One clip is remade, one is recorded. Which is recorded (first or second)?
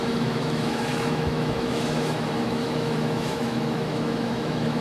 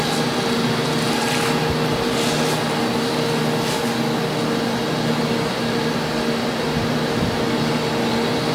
second